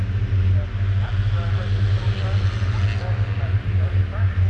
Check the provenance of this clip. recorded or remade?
recorded